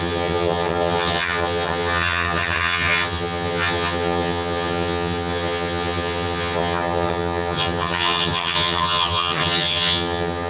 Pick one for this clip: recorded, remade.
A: remade